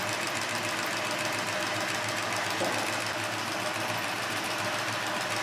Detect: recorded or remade recorded